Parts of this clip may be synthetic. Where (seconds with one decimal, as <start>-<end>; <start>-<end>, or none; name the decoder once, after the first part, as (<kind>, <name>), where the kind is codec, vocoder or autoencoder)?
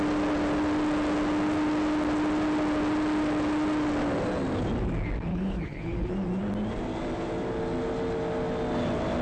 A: 5.3-6.1 (codec, HILCodec)